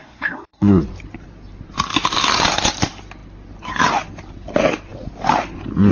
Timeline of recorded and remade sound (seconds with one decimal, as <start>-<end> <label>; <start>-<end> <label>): 0.0-0.8 remade; 0.8-5.9 recorded